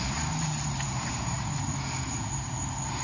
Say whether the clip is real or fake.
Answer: fake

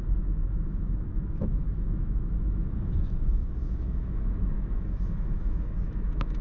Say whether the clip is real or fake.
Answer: fake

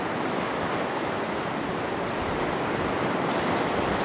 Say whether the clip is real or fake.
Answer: real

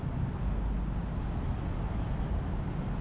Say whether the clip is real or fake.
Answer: real